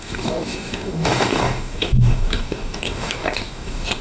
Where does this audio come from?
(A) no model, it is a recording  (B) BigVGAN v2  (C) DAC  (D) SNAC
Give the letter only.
C